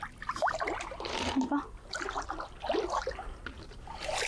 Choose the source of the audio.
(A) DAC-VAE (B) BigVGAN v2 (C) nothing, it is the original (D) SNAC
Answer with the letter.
C